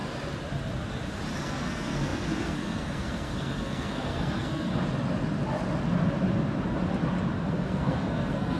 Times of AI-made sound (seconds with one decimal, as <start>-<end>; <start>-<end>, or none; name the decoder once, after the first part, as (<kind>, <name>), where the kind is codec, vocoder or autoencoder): 1.4-4.7 (codec, SNAC); 7.4-8.6